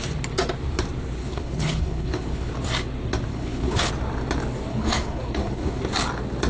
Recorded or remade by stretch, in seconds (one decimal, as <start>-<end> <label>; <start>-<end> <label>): 0.0-1.2 recorded; 1.2-2.5 remade; 2.5-3.3 recorded; 3.3-3.9 remade; 3.9-4.7 recorded; 4.7-5.8 remade; 5.8-6.5 recorded